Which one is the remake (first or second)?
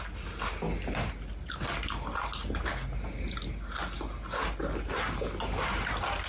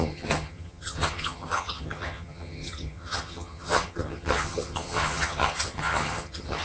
second